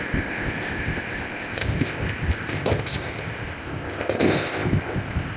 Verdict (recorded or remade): remade